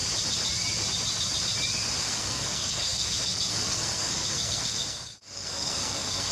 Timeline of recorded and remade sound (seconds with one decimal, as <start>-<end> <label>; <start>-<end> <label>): 0.0-2.0 recorded; 2.0-6.3 remade